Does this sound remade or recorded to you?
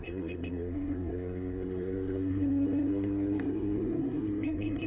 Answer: remade